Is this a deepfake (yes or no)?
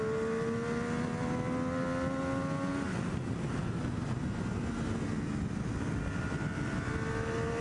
no